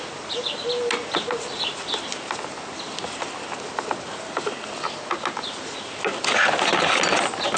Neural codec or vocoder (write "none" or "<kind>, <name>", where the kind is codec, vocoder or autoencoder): none